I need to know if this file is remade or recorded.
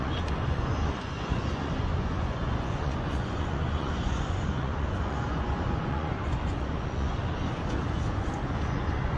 remade